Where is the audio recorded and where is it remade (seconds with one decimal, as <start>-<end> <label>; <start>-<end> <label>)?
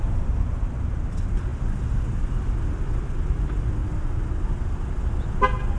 0.0-5.8 recorded